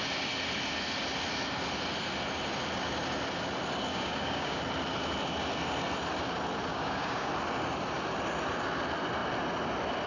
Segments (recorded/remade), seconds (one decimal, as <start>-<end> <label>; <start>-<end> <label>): 0.0-3.9 recorded; 3.9-4.6 remade; 4.6-6.7 recorded; 6.7-7.3 remade; 7.3-10.1 recorded